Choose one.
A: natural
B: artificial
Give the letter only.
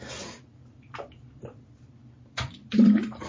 B